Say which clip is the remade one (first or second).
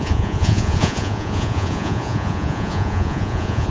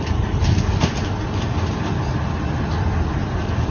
first